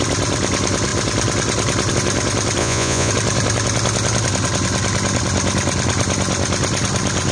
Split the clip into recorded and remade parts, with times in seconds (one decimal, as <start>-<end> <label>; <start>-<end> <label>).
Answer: 0.0-2.6 recorded; 2.6-3.1 remade; 3.1-7.3 recorded

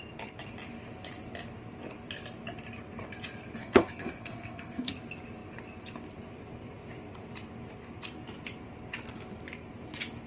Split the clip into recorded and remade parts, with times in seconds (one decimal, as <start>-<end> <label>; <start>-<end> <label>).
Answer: 0.0-3.6 recorded; 3.6-4.9 remade; 4.9-10.3 recorded

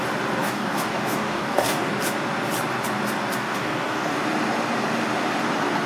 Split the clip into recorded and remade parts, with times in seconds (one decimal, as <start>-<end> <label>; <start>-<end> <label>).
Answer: 0.0-0.4 recorded; 0.4-1.9 remade; 1.9-3.4 recorded; 3.4-4.2 remade; 4.2-5.9 recorded

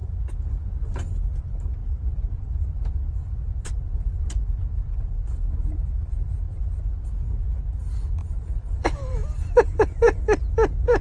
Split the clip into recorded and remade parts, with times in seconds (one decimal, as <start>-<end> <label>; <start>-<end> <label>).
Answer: 0.0-1.8 recorded; 1.8-6.4 remade; 6.4-8.2 recorded; 8.2-10.2 remade; 10.2-11.0 recorded

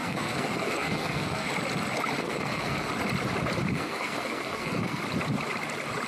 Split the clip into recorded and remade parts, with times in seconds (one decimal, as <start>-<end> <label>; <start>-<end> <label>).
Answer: 0.0-1.5 remade; 1.5-2.2 recorded; 2.2-2.9 remade; 2.9-3.7 recorded; 3.7-5.0 remade; 5.0-6.1 recorded